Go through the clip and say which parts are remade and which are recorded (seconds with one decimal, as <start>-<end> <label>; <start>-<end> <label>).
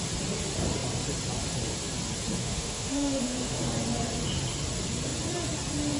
0.0-2.4 recorded; 2.4-3.6 remade; 3.6-6.0 recorded